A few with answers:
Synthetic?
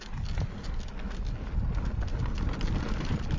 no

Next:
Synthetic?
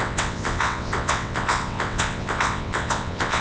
yes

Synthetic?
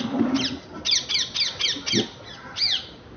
no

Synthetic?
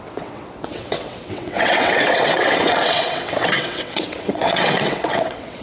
yes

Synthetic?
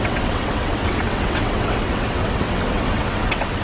yes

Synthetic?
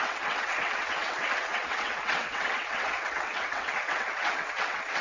yes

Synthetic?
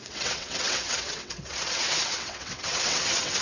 yes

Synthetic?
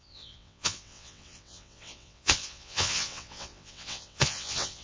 yes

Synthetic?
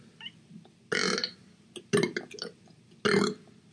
no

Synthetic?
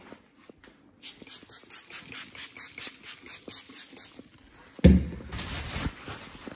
no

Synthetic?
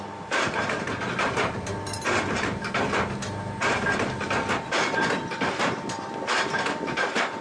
no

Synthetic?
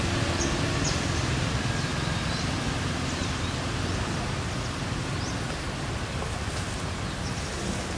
no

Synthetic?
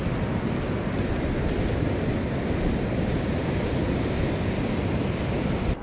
no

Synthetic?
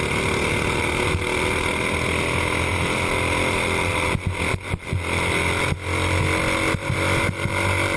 no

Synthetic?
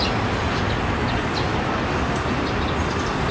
no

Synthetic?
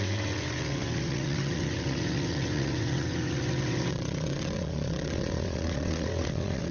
yes